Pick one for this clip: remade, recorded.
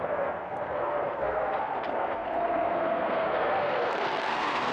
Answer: remade